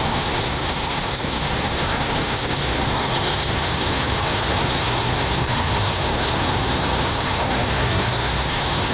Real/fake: fake